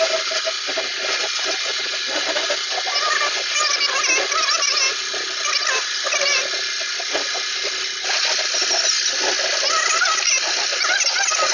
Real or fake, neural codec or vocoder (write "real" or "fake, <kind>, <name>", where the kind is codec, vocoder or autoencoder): real